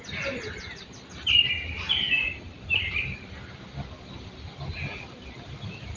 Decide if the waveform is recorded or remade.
recorded